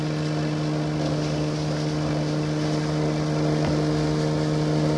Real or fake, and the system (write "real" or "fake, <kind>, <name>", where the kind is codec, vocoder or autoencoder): real